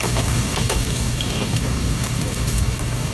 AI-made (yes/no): yes